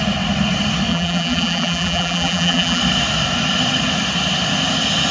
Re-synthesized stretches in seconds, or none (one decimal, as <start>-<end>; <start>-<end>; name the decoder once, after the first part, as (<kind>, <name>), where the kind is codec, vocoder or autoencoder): 0.9-2.8 (vocoder, BigVGAN v2)